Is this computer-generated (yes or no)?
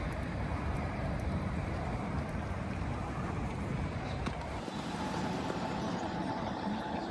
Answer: yes